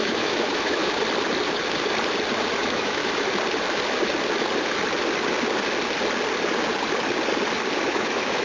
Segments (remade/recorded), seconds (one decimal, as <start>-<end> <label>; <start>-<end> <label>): 0.0-0.8 remade; 0.8-2.6 recorded; 2.6-3.0 remade; 3.0-7.9 recorded; 7.9-8.4 remade